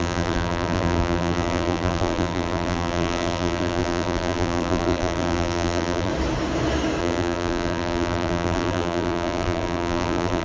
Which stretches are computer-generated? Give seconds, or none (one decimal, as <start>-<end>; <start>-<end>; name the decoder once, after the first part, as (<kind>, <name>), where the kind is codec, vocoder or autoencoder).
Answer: 0.0-6.1 (vocoder, BigVGAN v2); 7.0-10.4